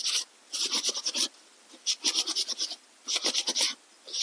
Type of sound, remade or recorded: recorded